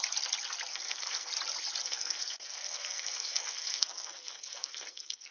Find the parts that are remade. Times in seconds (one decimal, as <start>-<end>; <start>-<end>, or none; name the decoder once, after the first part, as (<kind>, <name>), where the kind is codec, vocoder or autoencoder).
0.7-1.3 (codec, SNAC); 1.8-5.3